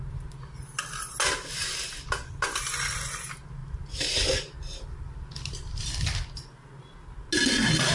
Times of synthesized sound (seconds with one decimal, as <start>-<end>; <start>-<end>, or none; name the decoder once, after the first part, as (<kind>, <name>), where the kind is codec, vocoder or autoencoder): none